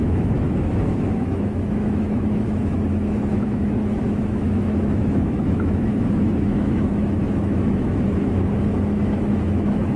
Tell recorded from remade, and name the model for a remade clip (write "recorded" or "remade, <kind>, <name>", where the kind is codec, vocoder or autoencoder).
remade, autoencoder, DAC-VAE